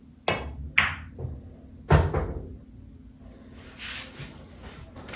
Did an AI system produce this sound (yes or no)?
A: no